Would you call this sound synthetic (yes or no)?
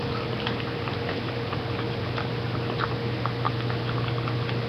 no